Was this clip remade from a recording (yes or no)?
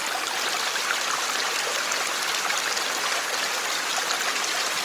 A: no